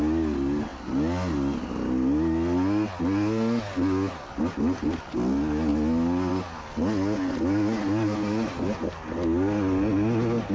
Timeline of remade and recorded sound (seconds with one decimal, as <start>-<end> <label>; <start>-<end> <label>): 0.0-10.5 recorded